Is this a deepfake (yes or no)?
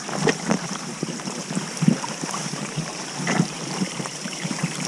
yes